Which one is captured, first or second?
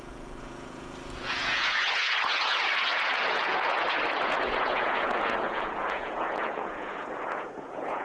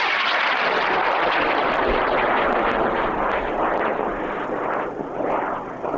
second